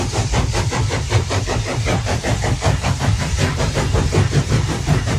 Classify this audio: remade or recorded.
remade